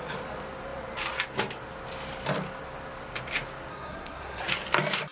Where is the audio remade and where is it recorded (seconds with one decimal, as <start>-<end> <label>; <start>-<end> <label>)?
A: 0.0-3.7 recorded; 3.7-4.4 remade; 4.4-5.1 recorded